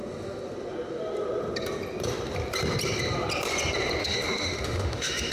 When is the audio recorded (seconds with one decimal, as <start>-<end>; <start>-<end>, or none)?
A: 0.0-4.0